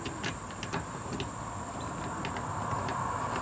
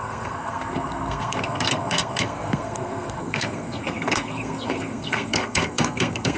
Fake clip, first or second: second